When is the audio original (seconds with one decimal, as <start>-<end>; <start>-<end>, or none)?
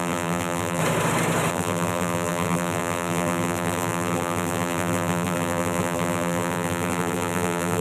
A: 0.8-1.5